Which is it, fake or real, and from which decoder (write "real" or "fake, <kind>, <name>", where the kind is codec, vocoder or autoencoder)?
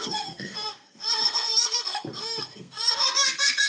fake, codec, SNAC